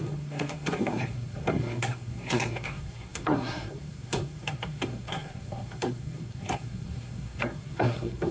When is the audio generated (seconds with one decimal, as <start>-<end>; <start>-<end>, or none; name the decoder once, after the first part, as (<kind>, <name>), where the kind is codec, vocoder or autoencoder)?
0.0-8.3 (codec, SNAC)